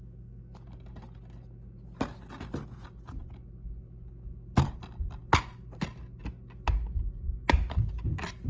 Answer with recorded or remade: recorded